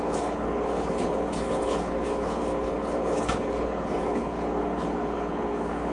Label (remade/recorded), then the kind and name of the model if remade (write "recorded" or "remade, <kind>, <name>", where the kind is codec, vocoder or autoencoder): remade, codec, HILCodec